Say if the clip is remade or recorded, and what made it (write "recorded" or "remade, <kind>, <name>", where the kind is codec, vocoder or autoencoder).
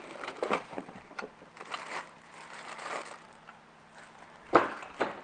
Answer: remade, vocoder, BigVGAN v2